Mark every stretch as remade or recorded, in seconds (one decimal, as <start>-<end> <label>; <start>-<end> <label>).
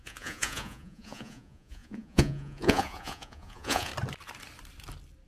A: 0.0-3.9 remade; 3.9-5.3 recorded